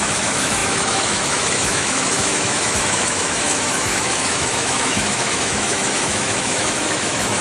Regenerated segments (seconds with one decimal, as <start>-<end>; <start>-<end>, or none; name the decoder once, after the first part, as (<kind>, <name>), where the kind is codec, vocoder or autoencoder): 0.0-7.4 (autoencoder, DAC-VAE)